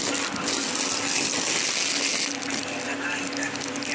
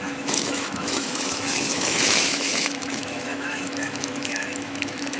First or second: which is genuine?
first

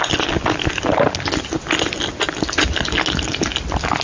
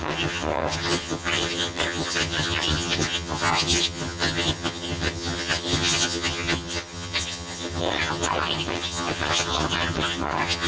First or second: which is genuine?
first